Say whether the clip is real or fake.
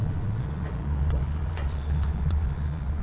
fake